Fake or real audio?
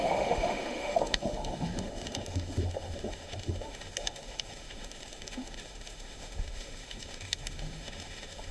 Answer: fake